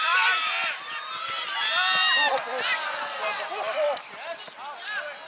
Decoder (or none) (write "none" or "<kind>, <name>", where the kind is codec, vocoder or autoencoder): none